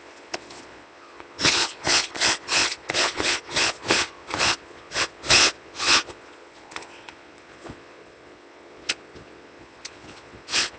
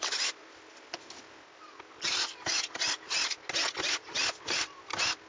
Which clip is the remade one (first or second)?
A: first